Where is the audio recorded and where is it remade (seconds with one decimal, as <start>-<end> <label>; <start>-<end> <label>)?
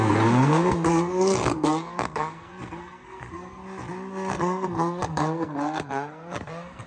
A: 0.0-3.6 remade; 3.6-4.1 recorded; 4.1-6.9 remade